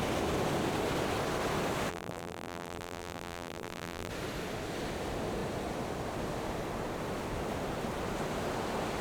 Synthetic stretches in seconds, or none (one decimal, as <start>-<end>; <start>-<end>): 1.9-4.1